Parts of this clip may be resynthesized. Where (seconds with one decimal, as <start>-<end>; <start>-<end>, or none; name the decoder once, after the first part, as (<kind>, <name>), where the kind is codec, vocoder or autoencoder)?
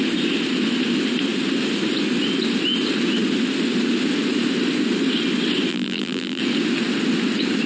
5.7-6.4 (vocoder, BigVGAN v2)